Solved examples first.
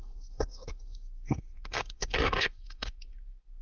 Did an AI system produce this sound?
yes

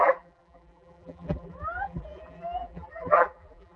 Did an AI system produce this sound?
yes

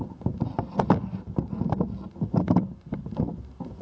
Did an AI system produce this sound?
no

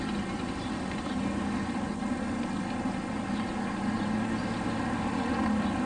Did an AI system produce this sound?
no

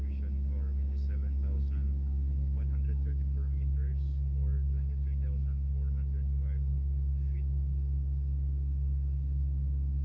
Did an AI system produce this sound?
yes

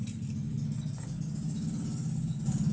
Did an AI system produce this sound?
no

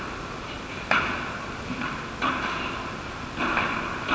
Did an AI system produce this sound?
no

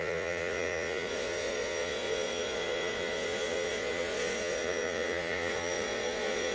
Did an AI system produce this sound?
yes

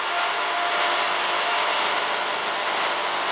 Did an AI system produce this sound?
no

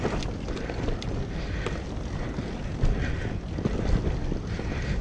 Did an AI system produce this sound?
no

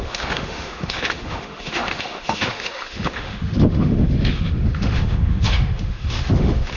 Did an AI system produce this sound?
yes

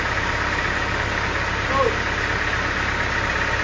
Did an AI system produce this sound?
no